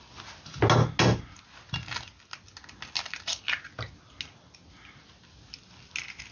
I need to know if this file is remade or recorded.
recorded